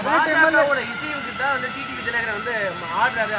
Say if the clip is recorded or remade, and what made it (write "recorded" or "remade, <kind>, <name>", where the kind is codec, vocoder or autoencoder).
recorded